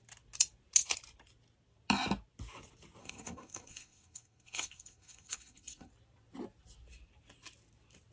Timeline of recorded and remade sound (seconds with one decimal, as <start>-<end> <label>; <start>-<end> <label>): 0.0-3.0 recorded; 3.0-5.9 remade; 5.9-8.1 recorded